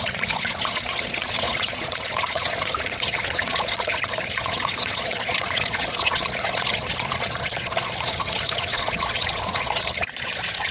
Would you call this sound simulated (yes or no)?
yes